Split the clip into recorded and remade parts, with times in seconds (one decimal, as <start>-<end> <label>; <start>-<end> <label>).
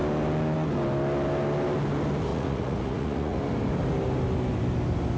0.0-2.3 recorded; 2.3-3.4 remade; 3.4-5.2 recorded